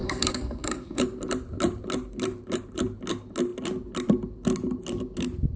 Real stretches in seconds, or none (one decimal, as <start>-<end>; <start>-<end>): 1.0-5.6